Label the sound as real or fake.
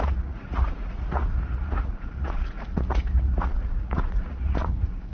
fake